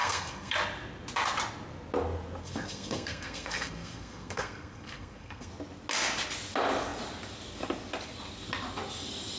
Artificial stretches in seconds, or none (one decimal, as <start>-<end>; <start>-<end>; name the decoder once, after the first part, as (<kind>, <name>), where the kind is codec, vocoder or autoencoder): 0.0-0.5 (codec, SNAC); 2.4-5.5